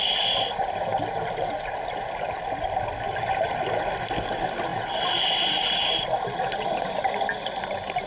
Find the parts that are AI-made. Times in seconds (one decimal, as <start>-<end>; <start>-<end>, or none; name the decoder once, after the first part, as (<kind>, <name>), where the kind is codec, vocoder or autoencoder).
none